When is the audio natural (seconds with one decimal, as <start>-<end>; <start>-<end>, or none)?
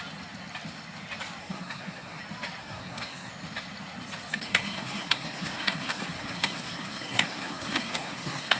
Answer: 0.0-1.4; 2.2-2.6; 3.3-4.3